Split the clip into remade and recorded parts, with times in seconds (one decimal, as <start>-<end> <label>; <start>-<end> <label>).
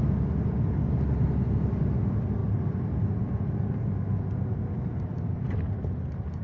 0.0-6.4 recorded